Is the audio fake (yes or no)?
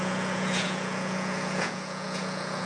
yes